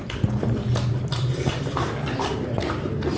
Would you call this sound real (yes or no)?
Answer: no